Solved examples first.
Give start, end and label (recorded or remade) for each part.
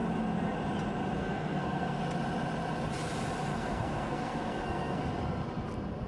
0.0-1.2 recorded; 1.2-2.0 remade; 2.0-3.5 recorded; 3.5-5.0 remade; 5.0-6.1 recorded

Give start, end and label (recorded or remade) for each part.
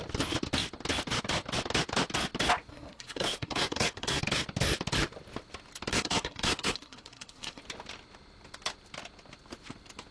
0.0-2.7 recorded; 2.7-4.2 remade; 4.2-5.9 recorded; 5.9-7.6 remade; 7.6-10.1 recorded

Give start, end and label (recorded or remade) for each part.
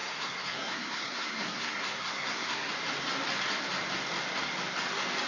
0.0-2.7 remade; 2.7-5.3 recorded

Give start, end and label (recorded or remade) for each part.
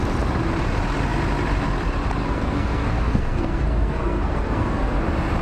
0.0-2.2 recorded; 2.2-5.0 remade; 5.0-5.4 recorded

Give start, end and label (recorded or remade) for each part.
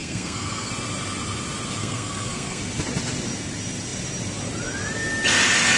0.0-0.7 remade; 0.7-1.8 recorded; 1.8-2.6 remade; 2.6-5.8 recorded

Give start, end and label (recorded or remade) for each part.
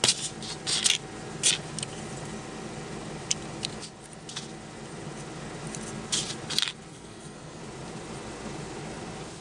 0.0-6.9 recorded; 6.9-7.6 remade; 7.6-9.4 recorded